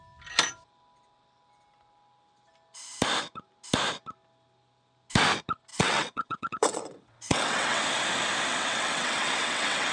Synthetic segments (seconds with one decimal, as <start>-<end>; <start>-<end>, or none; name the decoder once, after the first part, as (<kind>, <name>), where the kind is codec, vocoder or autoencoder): 5.7-7.8 (vocoder, WaveNeXt); 8.5-9.9